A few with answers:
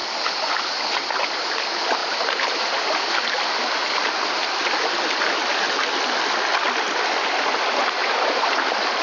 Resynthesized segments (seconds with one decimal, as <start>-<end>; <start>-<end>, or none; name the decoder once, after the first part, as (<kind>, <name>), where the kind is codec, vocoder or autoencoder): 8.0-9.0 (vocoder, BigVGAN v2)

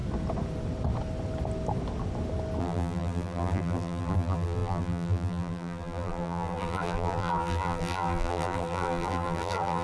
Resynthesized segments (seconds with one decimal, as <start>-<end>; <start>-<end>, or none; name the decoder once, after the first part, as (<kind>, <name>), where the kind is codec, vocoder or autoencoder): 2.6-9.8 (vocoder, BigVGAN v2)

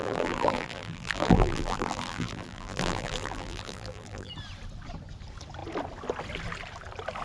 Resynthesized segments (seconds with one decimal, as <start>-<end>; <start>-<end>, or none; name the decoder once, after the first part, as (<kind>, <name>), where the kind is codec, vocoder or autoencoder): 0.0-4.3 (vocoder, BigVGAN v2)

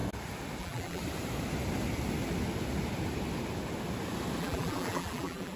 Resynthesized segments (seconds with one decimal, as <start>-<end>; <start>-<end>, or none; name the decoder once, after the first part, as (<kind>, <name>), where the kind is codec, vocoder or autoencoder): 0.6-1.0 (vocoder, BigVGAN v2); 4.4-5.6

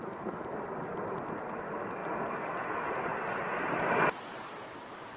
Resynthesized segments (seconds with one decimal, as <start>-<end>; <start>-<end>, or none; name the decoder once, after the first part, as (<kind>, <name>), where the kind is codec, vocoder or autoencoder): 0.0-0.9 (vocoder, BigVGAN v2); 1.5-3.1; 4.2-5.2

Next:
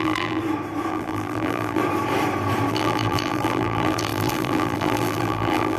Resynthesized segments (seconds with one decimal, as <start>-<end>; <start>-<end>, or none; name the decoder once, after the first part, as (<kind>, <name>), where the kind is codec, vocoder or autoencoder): 0.0-0.4 (vocoder, BigVGAN v2); 0.9-1.8; 2.7-5.8